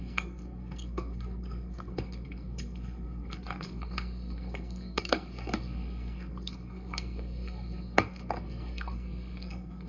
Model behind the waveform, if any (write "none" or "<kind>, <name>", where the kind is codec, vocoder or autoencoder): codec, SNAC